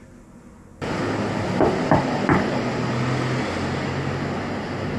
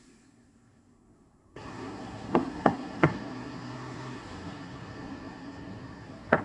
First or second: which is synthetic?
second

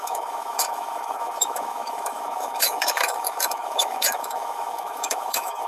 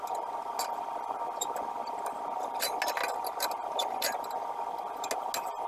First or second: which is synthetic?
first